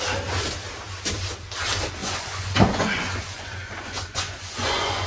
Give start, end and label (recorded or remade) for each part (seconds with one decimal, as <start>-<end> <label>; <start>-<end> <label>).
0.0-2.0 recorded; 2.0-5.1 remade

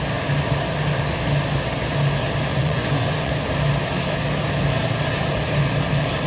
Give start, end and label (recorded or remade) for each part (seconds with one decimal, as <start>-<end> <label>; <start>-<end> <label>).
0.0-2.5 recorded; 2.5-3.3 remade; 3.3-6.3 recorded

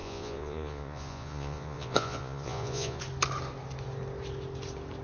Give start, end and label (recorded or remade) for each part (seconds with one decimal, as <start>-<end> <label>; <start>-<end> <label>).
0.0-3.0 remade; 3.0-5.0 recorded

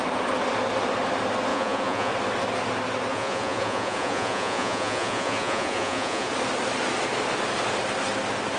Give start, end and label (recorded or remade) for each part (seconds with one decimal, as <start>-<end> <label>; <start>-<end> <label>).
0.0-1.5 recorded; 1.5-2.1 remade; 2.1-3.1 recorded; 3.1-6.3 remade; 6.3-8.6 recorded

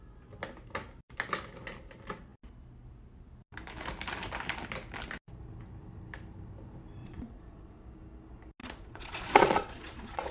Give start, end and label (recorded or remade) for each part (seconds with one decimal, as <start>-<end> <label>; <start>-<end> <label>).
0.0-7.0 recorded; 7.0-7.8 remade; 7.8-8.6 recorded; 8.6-10.3 remade

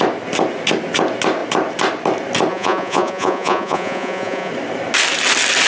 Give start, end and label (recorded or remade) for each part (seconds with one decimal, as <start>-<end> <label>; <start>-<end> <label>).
0.0-2.5 recorded; 2.5-4.5 remade; 4.5-5.7 recorded

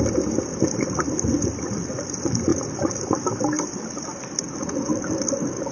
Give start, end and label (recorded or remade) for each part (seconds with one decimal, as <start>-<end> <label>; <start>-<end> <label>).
0.0-5.7 recorded

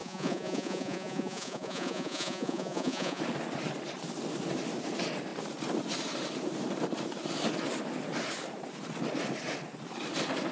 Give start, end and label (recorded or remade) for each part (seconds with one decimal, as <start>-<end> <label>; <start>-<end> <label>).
0.0-3.2 remade; 3.2-10.5 recorded